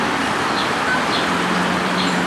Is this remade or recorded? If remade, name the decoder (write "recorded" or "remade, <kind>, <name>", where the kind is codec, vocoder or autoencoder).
recorded